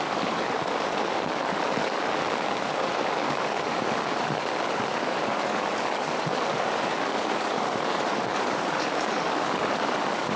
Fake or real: fake